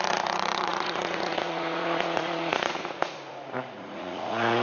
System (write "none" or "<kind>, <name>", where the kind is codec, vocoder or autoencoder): vocoder, Vocos